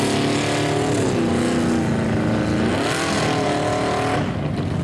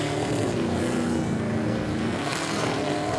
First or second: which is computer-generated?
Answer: second